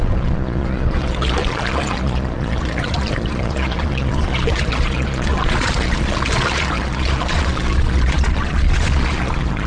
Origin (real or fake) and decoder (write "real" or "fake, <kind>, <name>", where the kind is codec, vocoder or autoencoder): fake, vocoder, Vocos